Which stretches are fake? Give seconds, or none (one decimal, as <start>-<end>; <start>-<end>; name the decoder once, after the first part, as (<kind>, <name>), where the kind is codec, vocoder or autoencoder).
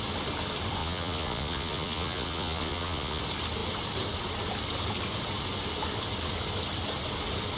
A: 0.8-3.2 (vocoder, Vocos)